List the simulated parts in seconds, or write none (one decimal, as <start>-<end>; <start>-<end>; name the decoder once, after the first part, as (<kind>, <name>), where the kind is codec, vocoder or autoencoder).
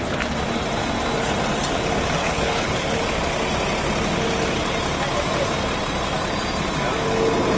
2.2-3.0 (codec, HILCodec)